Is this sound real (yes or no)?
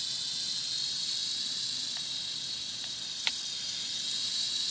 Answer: no